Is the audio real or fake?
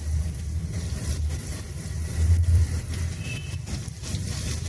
fake